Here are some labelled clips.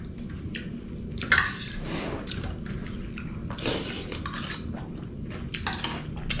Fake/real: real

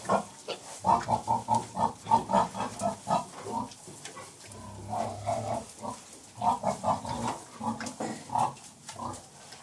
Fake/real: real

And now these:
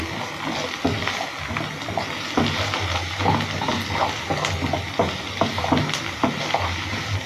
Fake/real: real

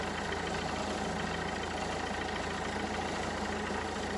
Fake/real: real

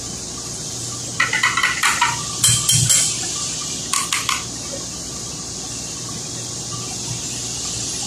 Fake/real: real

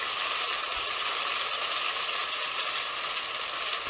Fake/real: real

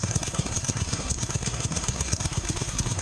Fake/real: fake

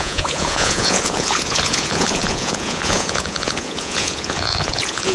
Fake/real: fake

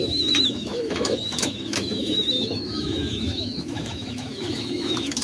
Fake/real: fake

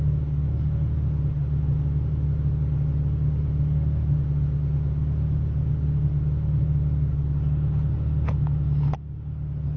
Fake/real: real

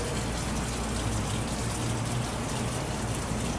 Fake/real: real